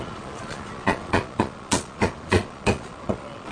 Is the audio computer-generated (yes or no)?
yes